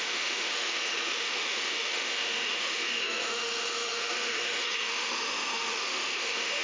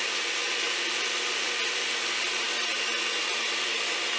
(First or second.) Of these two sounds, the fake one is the first